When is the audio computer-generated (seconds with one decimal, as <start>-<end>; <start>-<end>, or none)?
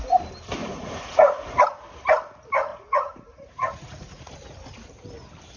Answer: 0.6-1.6; 2.7-4.3